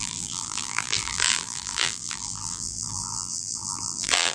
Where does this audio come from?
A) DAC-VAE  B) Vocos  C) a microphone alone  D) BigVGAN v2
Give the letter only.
D